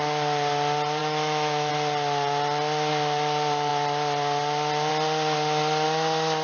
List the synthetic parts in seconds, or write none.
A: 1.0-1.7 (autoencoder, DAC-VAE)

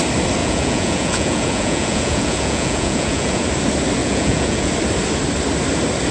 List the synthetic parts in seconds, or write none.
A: 0.4-3.4 (vocoder, Vocos); 4.0-4.7

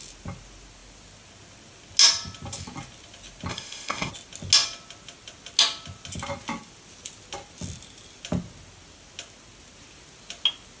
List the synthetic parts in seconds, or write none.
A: 3.5-4.1 (codec, ZipCodec)